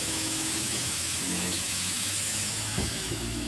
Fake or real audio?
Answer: fake